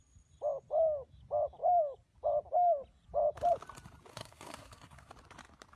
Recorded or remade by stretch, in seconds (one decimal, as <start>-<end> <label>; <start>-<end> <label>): 0.0-4.1 recorded; 4.1-5.1 remade; 5.1-5.8 recorded